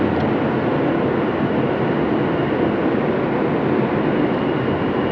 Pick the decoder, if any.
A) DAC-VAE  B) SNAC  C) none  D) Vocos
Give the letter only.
C